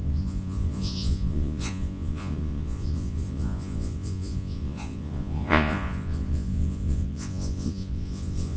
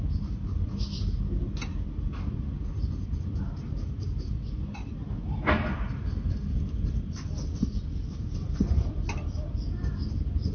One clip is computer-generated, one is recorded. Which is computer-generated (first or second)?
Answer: first